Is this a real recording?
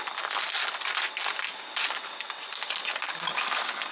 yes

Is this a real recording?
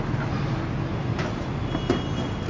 yes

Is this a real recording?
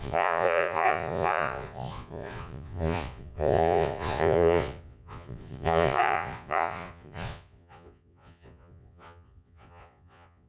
no